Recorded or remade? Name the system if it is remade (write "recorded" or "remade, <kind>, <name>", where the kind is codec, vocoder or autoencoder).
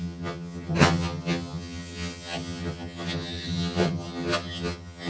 remade, vocoder, HiFi-GAN